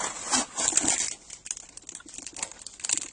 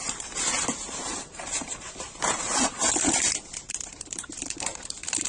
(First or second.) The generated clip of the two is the second